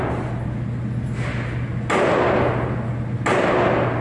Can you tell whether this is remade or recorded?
recorded